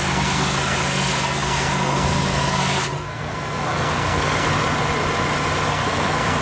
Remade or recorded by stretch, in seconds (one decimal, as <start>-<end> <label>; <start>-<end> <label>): 0.0-4.5 remade; 4.5-5.7 recorded; 5.7-6.4 remade